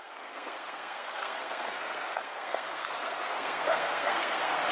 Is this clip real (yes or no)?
no